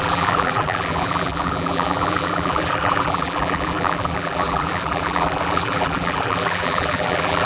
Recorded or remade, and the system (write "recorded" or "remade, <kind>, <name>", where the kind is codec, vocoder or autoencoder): remade, vocoder, BigVGAN v2